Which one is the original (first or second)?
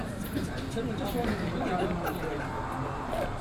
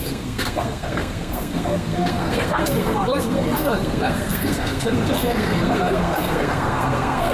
first